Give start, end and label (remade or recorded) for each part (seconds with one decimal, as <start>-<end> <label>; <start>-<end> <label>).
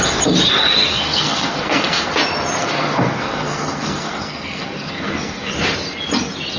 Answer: 0.0-0.9 recorded; 0.9-2.1 remade; 2.1-2.6 recorded; 2.6-5.5 remade; 5.5-6.6 recorded